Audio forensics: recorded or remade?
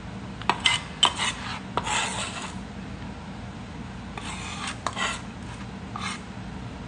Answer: recorded